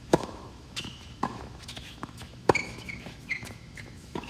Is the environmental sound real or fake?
fake